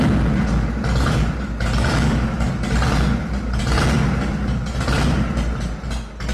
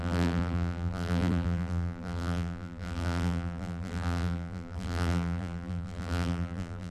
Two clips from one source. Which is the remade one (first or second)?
second